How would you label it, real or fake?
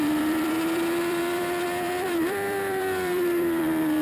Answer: fake